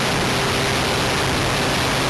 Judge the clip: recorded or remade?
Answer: recorded